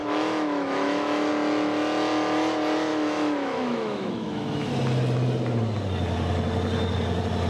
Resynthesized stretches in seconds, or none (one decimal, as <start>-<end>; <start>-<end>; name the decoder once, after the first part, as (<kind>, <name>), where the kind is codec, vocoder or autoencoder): 0.0-1.3 (autoencoder, DAC-VAE); 2.9-4.7